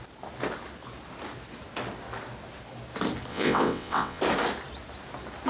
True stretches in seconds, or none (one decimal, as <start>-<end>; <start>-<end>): 0.0-3.3; 4.2-5.5